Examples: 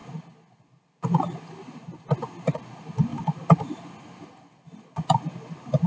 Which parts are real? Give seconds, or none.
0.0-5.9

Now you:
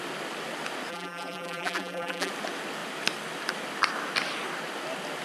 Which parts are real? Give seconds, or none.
0.0-0.9; 2.3-5.2

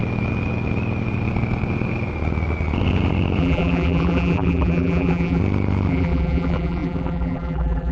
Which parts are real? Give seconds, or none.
0.0-3.4; 5.4-5.9

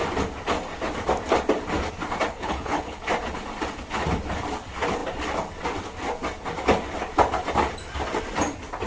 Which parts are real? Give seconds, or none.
0.0-2.3; 3.0-8.9